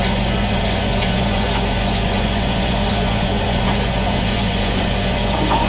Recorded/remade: remade